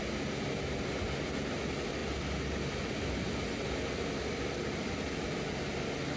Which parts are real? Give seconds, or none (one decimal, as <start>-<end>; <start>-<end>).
0.0-6.2